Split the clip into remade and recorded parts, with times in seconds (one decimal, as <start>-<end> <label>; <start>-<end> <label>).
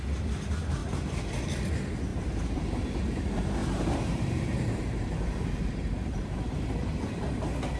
0.0-0.8 recorded; 0.8-1.4 remade; 1.4-2.1 recorded; 2.1-2.6 remade; 2.6-3.6 recorded; 3.6-6.6 remade; 6.6-7.8 recorded